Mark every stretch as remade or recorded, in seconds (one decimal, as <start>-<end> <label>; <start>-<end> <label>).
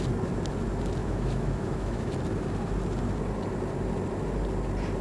0.0-1.0 recorded; 1.0-2.1 remade; 2.1-5.0 recorded